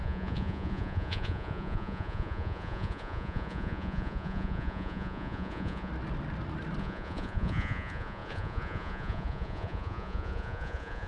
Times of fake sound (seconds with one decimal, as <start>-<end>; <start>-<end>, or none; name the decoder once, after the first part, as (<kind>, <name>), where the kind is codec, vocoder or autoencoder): 0.0-5.9 (vocoder, Vocos); 6.8-11.1